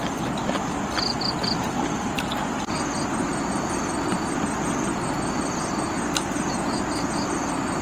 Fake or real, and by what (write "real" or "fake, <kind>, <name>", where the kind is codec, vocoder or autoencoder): real